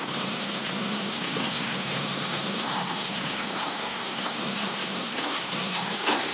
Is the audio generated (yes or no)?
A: yes